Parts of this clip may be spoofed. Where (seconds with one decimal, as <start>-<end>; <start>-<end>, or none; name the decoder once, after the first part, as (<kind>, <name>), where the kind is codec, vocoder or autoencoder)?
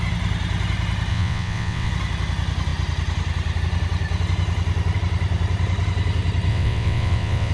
1.1-1.9 (vocoder, WaveNeXt); 6.5-7.5